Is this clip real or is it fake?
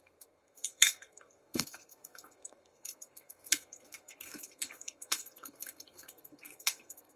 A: fake